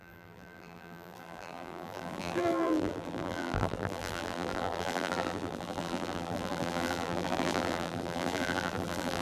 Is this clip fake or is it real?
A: fake